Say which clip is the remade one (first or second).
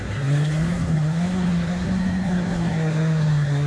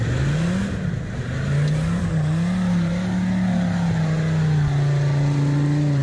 first